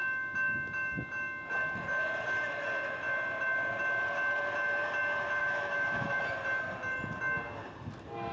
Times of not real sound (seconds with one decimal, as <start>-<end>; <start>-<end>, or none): 5.4-6.2